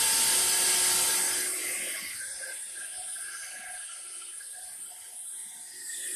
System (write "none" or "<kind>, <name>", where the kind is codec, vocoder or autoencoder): none